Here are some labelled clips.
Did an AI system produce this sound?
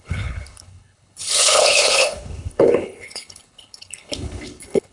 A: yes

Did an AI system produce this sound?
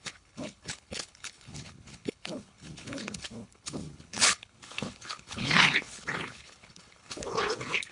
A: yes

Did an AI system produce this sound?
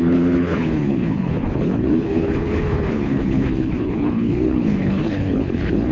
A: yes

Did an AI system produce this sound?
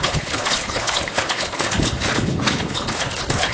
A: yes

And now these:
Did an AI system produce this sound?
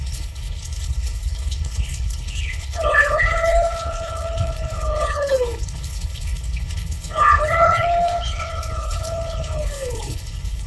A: yes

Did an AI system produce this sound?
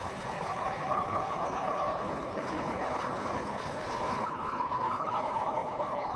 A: yes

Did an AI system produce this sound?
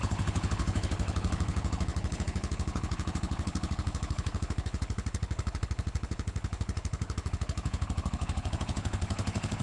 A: yes